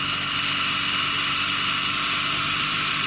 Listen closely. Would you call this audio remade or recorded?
recorded